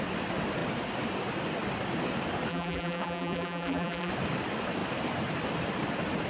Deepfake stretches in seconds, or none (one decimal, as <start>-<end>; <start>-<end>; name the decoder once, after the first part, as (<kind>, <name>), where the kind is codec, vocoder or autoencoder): 2.5-4.1 (vocoder, BigVGAN v2)